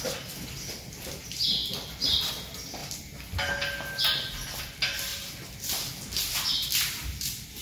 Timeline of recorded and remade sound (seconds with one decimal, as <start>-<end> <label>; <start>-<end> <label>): 0.0-7.6 recorded